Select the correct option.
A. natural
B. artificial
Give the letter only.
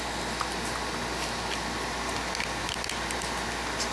A